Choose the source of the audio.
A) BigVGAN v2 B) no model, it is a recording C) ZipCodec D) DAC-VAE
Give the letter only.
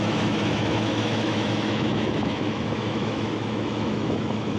D